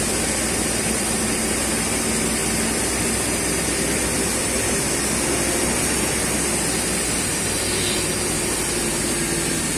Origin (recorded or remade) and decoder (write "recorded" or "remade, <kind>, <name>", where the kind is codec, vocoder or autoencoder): recorded